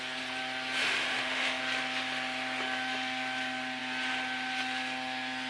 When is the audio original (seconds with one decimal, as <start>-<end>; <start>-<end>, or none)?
0.0-0.8; 1.6-5.5